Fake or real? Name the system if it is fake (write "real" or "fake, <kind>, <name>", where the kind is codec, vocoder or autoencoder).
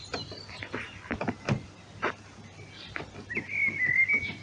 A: fake, vocoder, BigVGAN v2